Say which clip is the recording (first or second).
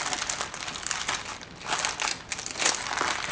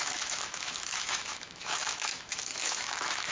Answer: first